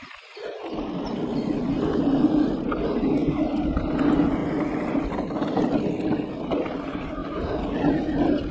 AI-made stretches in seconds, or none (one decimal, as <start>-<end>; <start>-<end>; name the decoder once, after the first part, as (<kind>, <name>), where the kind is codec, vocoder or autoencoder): none